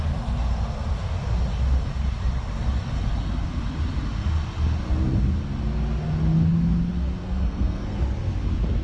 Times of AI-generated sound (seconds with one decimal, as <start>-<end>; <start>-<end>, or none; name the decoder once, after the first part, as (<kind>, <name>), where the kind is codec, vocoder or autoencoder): 7.2-8.0 (codec, SNAC)